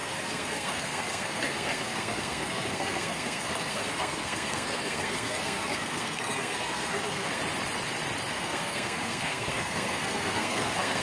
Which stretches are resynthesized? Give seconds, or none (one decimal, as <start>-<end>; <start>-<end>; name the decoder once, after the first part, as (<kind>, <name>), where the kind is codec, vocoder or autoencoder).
0.0-7.4 (codec, SNAC); 8.3-11.0